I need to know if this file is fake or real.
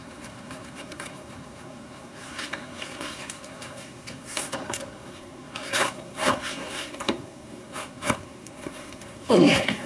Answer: fake